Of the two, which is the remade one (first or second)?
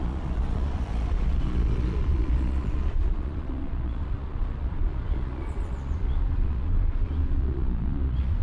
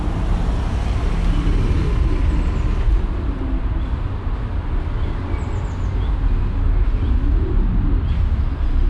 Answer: first